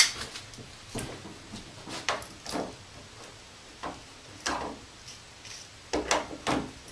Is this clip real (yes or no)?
yes